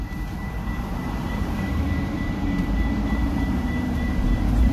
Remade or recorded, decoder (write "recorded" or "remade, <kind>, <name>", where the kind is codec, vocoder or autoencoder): remade, vocoder, BigVGAN v2